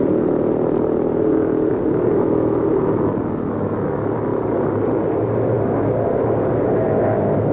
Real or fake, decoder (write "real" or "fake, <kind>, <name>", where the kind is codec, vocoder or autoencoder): real